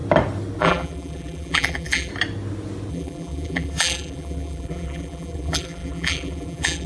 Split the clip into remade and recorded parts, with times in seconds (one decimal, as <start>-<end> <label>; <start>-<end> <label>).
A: 0.0-0.6 recorded; 0.6-2.1 remade; 2.1-2.9 recorded; 2.9-6.9 remade